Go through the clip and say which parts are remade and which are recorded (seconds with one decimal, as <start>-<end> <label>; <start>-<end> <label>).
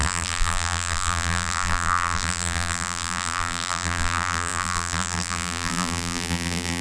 0.0-6.8 remade